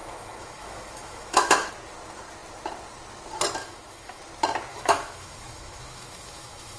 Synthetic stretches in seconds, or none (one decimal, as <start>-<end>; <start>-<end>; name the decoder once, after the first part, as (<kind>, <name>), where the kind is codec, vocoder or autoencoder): 0.0-1.7 (autoencoder, DAC-VAE); 3.6-4.2; 4.7-6.8